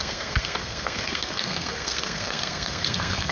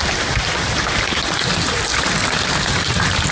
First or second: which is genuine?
second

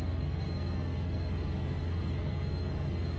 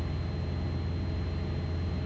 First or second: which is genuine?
second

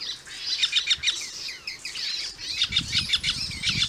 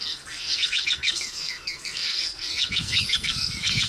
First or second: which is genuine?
first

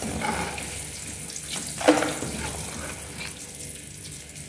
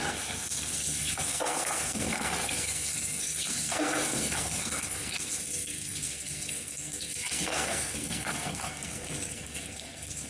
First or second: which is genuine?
first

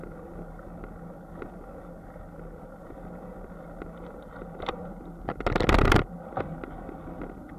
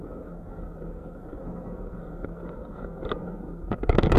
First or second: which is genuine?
first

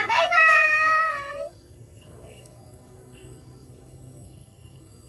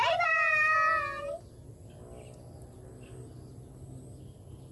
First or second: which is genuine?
second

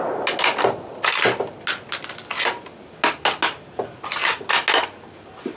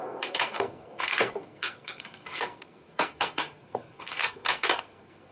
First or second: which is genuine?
first